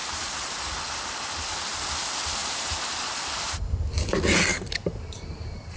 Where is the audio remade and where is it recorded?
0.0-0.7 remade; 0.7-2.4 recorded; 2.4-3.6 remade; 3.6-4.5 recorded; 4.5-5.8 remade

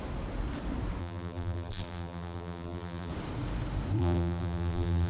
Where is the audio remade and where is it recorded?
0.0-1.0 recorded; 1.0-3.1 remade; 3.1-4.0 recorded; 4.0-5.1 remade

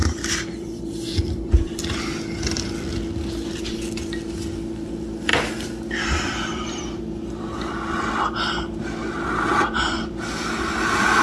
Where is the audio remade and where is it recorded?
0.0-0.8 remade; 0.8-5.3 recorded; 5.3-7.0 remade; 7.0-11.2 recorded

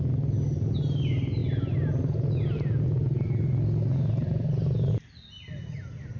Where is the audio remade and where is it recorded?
0.0-6.2 recorded

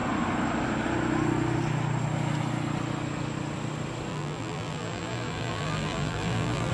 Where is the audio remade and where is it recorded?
0.0-4.1 recorded; 4.1-6.7 remade